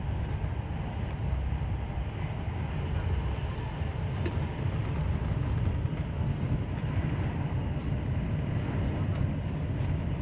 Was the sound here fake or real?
real